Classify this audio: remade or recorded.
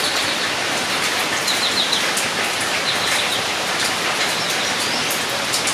remade